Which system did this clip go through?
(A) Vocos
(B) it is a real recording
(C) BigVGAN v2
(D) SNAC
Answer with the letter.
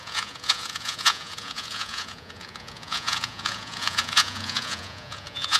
A